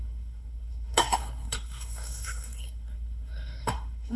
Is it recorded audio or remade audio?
remade